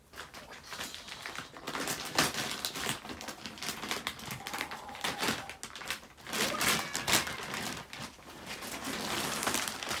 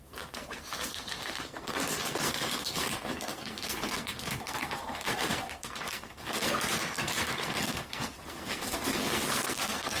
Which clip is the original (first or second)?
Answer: first